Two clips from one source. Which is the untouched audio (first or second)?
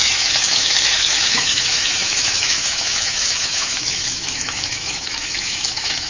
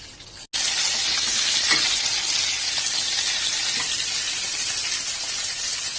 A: second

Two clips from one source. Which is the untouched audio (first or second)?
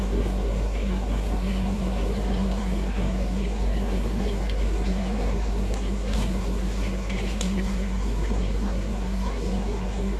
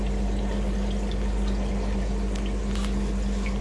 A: second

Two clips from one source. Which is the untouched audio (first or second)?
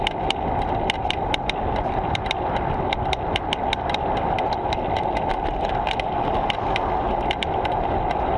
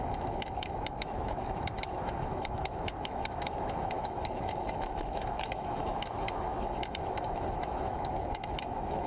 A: first